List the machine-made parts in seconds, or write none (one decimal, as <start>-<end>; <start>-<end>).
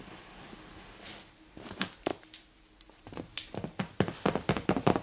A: none